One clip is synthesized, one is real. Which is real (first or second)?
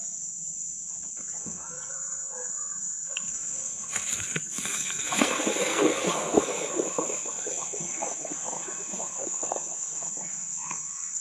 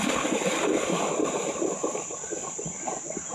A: second